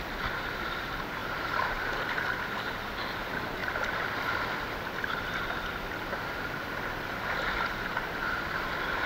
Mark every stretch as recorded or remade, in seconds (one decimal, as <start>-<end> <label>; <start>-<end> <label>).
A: 0.0-9.1 recorded